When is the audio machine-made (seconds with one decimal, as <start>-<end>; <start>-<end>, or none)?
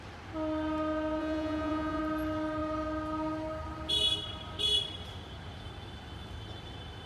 1.2-2.0